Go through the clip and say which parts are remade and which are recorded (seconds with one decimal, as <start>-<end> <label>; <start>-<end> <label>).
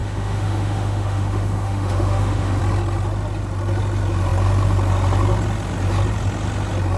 0.0-2.6 remade; 2.6-7.0 recorded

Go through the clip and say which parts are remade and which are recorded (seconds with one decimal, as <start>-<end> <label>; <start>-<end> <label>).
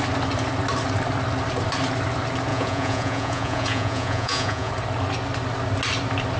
0.0-2.5 recorded; 2.5-4.7 remade; 4.7-6.4 recorded